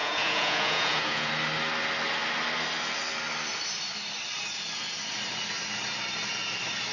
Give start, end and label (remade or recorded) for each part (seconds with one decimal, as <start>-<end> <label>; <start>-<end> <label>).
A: 0.0-1.3 remade; 1.3-6.9 recorded